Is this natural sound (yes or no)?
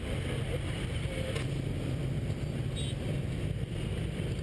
yes